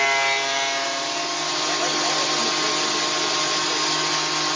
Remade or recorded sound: recorded